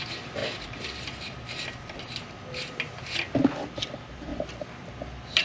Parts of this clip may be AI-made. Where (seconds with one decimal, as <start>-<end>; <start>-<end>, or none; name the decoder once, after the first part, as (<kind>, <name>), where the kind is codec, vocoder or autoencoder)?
none

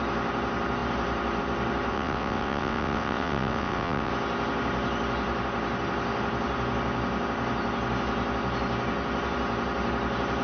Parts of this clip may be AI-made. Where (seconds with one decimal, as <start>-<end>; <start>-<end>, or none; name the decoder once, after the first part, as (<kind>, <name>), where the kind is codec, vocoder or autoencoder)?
1.9-4.1 (vocoder, WaveNeXt)

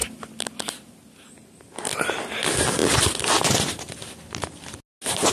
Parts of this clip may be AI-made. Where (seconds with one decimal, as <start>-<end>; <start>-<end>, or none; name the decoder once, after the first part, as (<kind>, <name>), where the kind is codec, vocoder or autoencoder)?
none

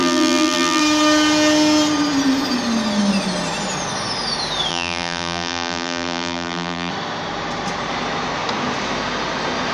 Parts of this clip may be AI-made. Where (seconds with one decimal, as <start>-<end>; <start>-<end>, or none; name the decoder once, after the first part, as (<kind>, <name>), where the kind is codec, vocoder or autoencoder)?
0.0-0.8 (vocoder, BigVGAN v2); 4.7-6.9

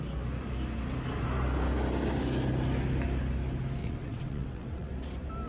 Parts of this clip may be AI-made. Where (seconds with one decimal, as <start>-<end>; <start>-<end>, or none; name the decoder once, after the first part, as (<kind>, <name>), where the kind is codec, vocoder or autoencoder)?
3.8-4.9 (vocoder, WaveNeXt)

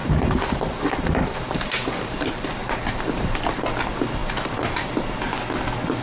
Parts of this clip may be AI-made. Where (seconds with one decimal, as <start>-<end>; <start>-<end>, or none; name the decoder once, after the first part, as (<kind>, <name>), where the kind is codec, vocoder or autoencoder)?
0.0-3.6 (vocoder, BigVGAN v2); 4.2-5.1

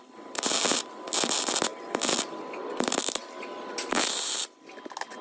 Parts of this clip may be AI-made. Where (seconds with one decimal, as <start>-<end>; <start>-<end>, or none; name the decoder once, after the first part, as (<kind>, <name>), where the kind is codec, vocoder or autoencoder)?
none